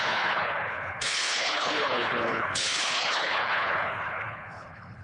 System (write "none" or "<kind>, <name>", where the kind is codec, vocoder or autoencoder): codec, HILCodec